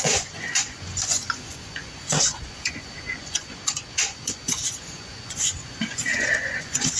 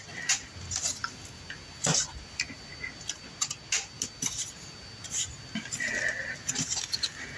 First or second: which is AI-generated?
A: first